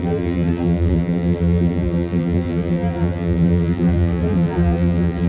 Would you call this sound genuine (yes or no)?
no